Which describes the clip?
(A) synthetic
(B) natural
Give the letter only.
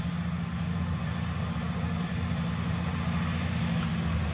B